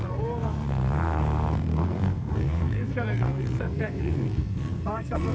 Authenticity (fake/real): fake